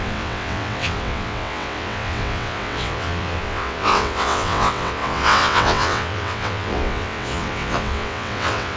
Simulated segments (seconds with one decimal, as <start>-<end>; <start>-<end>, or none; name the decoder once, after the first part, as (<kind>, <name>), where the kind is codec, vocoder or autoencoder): 0.0-8.8 (vocoder, WaveNeXt)